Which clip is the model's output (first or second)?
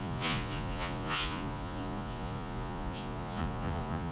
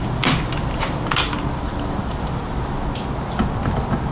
first